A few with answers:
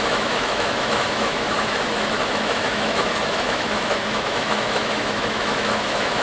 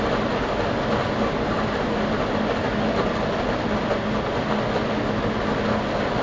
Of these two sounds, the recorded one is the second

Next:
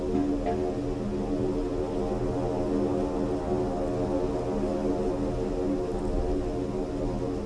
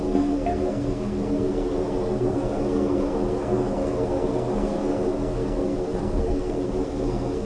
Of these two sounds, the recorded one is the first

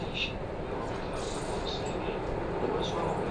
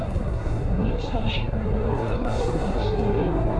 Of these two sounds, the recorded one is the first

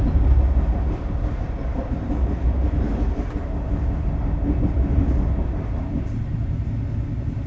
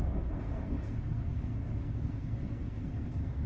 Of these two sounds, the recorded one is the first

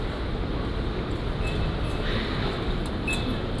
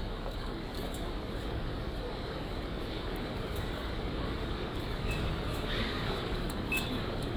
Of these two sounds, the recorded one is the first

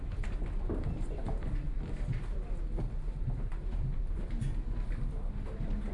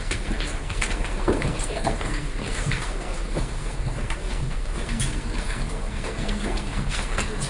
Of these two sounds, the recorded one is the first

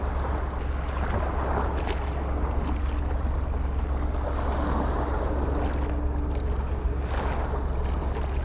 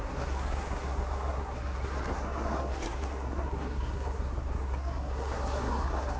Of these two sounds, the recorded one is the first